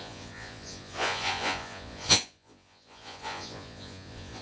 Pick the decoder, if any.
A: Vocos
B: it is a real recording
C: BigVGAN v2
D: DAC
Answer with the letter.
A